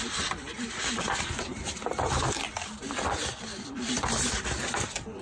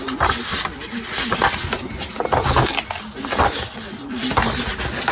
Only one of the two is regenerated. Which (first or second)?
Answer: first